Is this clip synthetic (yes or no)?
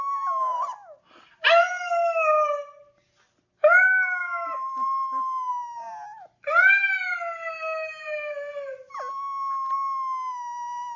no